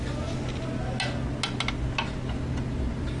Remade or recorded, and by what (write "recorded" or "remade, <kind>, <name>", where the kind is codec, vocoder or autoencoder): recorded